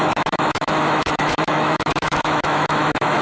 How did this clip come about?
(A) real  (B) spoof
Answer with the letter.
B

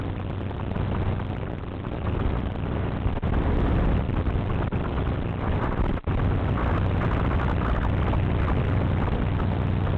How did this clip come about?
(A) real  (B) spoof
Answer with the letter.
A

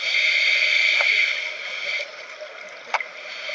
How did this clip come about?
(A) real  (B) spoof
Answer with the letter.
A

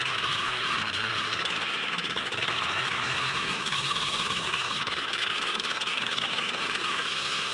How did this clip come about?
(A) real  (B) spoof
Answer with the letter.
B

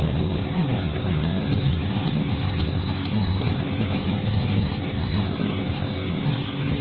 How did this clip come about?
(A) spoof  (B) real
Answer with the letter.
A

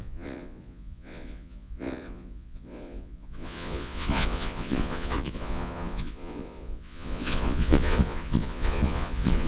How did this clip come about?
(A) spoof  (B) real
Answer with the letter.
A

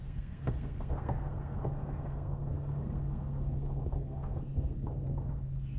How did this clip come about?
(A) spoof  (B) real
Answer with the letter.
A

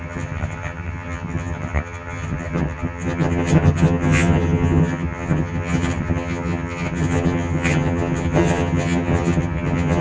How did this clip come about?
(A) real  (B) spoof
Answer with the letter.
B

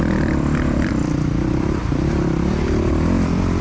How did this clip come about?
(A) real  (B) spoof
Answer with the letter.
B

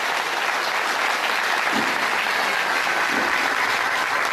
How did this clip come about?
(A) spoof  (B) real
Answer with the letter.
B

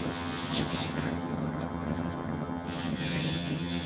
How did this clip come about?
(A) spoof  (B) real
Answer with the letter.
A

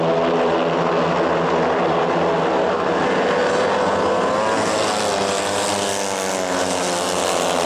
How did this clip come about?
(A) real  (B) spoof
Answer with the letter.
A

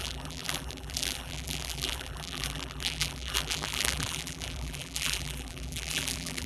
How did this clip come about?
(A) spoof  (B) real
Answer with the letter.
A